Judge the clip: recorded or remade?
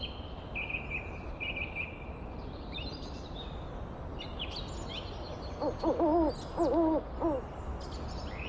recorded